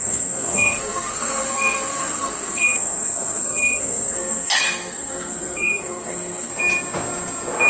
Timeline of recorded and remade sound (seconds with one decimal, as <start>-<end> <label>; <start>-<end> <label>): 0.0-6.5 remade; 6.5-7.7 recorded